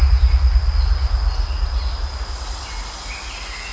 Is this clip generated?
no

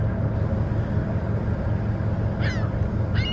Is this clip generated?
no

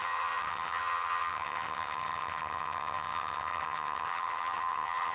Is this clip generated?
yes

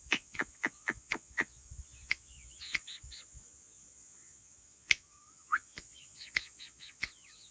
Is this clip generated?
yes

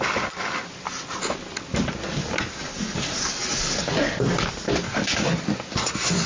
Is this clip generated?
no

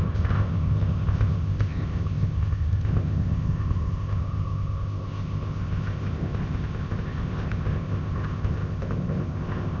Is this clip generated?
yes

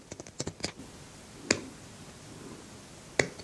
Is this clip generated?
no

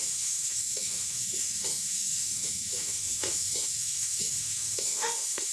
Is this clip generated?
yes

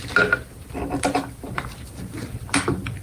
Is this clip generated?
no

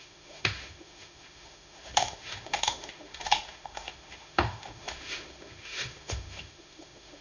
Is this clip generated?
yes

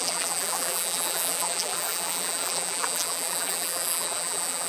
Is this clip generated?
yes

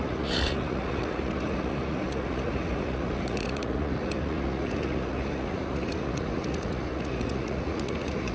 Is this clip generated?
yes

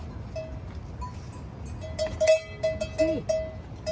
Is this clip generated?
no